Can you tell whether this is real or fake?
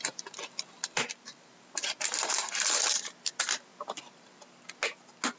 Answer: real